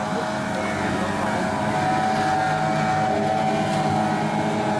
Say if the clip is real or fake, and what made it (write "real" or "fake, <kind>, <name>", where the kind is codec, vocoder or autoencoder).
real